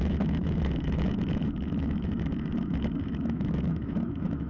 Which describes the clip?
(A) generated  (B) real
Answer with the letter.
A